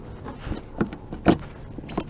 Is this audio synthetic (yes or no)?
no